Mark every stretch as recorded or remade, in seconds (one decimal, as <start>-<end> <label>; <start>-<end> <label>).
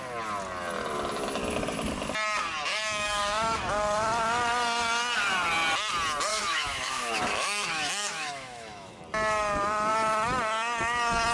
0.0-2.7 recorded; 2.7-3.6 remade; 3.6-6.3 recorded; 6.3-9.0 remade; 9.0-11.3 recorded